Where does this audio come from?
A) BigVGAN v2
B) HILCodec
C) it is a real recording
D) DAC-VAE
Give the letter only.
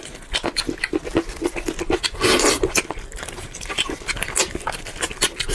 C